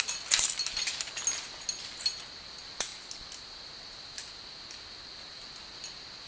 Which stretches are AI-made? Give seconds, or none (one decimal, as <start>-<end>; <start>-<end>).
none